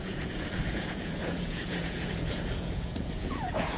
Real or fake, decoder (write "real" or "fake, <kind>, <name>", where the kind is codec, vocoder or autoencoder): fake, vocoder, Vocos